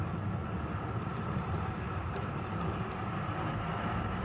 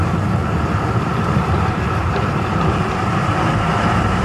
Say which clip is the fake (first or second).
second